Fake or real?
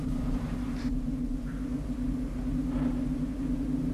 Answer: real